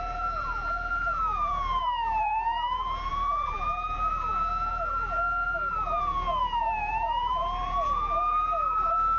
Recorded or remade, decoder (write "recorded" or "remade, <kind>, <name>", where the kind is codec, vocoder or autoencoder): remade, vocoder, BigVGAN v2